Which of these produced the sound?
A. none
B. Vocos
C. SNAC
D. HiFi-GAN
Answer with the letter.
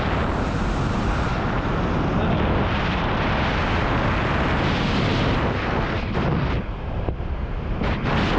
A